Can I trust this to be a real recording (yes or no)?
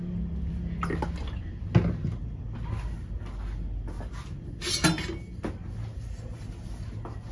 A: yes